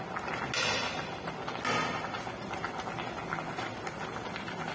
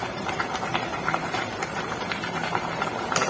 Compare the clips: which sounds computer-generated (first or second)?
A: second